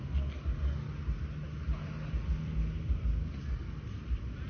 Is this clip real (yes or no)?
yes